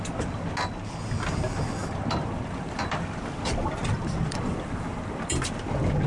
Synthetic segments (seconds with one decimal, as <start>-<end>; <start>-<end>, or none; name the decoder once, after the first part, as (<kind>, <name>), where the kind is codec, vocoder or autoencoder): 1.8-5.5 (vocoder, BigVGAN v2)